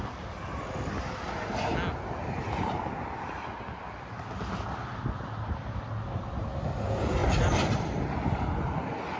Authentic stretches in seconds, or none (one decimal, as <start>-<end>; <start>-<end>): 0.0-7.2; 8.0-9.2